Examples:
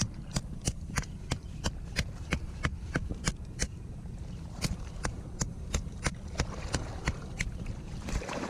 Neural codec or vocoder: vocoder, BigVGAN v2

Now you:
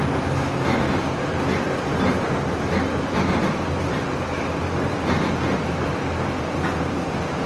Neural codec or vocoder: none